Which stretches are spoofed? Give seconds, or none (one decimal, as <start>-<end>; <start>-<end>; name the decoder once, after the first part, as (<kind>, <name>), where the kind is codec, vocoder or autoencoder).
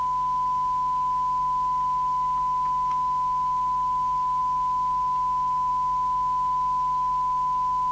none